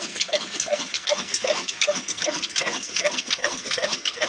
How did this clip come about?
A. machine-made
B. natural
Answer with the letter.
A